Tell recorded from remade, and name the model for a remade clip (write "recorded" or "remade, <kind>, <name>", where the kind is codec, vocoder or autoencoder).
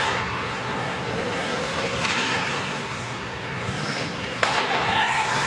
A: remade, codec, SNAC